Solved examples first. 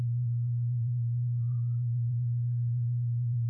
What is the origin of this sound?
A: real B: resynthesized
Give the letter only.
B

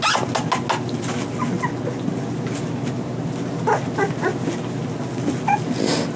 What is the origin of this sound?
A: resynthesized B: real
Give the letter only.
B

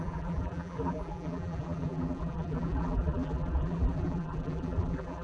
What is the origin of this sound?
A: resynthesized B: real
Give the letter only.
A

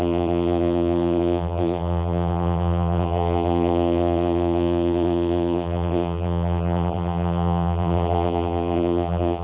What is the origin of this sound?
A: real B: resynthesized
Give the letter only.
B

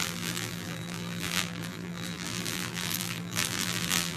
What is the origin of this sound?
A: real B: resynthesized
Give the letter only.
B